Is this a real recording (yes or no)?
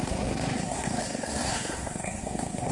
no